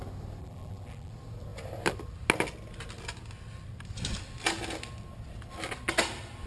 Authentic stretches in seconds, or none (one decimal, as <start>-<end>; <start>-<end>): 0.0-0.4; 1.1-6.5

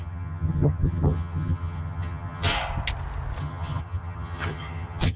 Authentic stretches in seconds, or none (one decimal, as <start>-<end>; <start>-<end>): 2.5-3.4